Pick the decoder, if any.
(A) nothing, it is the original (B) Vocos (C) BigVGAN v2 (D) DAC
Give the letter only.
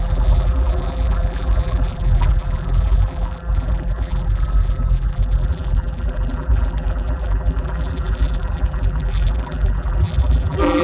C